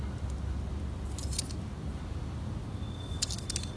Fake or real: real